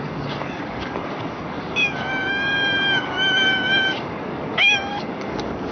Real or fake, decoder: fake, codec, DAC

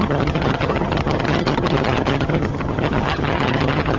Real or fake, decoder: fake, vocoder, HiFi-GAN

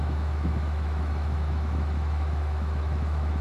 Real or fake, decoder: fake, autoencoder, DAC-VAE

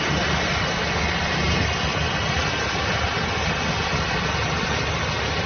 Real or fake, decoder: real